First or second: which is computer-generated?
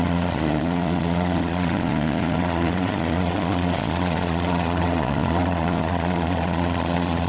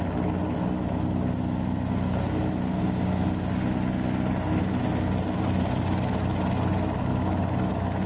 first